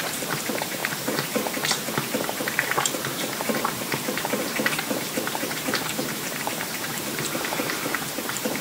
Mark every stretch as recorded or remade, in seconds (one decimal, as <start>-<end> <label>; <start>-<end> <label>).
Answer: 0.0-1.8 remade; 1.8-2.8 recorded; 2.8-8.6 remade